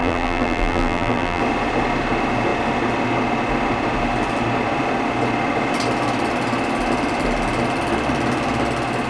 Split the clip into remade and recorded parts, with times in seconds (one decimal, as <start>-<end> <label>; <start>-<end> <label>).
0.0-1.4 remade; 1.4-9.1 recorded